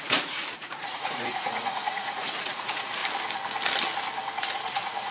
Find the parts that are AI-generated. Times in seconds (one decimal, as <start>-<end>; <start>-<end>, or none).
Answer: 0.0-3.0; 4.5-5.1